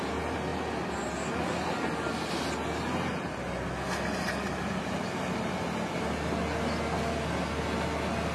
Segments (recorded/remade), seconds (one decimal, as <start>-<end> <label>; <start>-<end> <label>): 0.0-8.3 recorded